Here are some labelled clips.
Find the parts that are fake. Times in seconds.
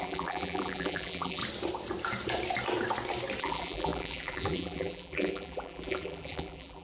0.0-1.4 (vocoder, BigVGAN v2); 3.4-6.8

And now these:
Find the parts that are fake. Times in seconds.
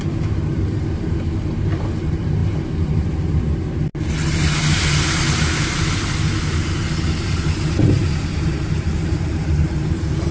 0.0-3.9 (vocoder, BigVGAN v2); 7.2-10.3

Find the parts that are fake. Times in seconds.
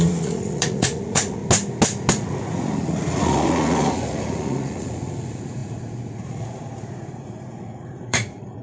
0.0-1.4 (vocoder, Vocos); 2.1-8.6